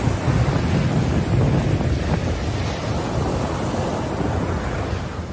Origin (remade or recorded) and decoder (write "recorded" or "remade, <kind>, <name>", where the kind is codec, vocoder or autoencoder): recorded